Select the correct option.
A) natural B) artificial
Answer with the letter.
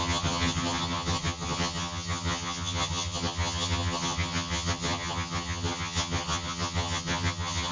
B